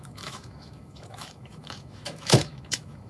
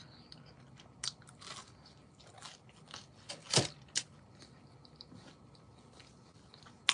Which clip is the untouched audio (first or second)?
second